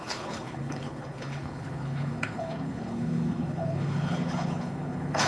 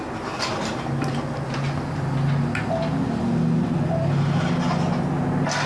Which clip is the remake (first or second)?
first